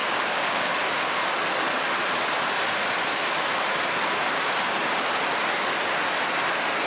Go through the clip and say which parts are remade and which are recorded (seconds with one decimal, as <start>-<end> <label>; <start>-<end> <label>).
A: 0.0-0.7 remade; 0.7-6.9 recorded

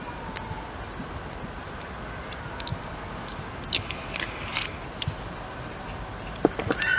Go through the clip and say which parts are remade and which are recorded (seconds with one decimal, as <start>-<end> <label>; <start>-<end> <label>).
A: 0.0-7.0 recorded

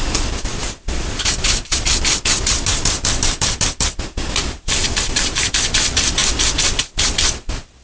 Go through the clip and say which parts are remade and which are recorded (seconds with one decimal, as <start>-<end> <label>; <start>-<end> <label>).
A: 0.0-6.2 remade; 6.2-7.0 recorded; 7.0-7.8 remade